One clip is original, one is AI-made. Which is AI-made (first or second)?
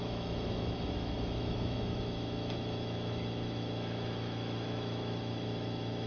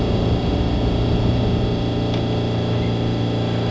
first